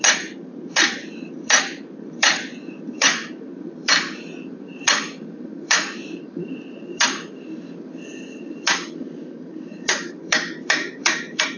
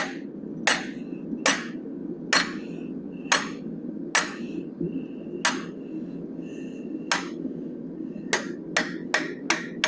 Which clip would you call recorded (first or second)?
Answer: second